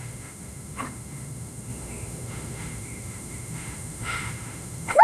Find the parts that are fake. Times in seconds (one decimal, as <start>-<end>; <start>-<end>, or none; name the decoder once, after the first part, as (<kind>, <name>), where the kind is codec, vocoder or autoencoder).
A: 0.0-5.0 (autoencoder, DAC-VAE)